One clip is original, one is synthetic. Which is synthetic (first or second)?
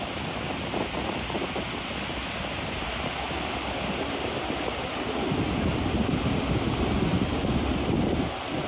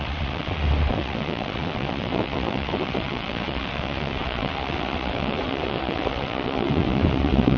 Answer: second